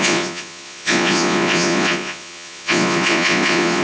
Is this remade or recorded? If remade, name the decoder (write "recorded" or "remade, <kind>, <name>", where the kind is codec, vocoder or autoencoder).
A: remade, vocoder, Vocos